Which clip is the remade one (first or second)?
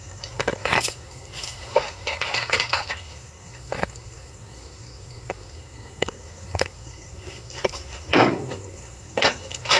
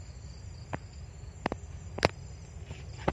first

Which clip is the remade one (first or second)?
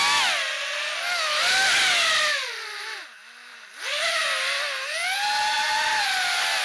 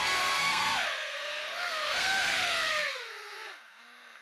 second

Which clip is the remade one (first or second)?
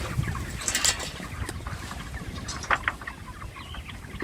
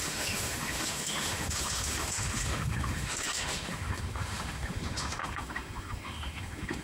second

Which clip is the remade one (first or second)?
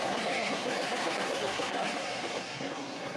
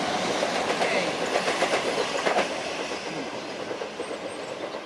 first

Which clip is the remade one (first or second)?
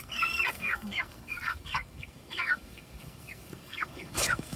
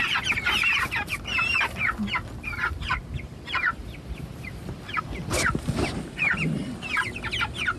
first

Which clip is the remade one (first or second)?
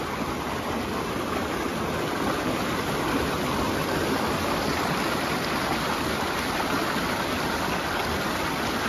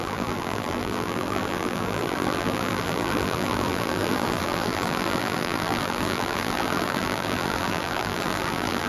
second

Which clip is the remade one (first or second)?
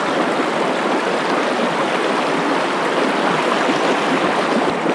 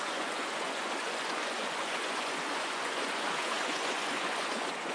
second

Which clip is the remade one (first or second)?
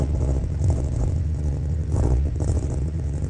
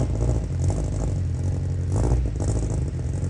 first